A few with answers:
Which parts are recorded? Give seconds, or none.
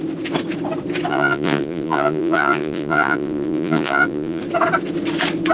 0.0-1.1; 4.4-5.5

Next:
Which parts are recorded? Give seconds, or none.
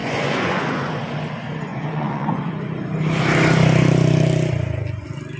0.9-1.7; 2.5-5.4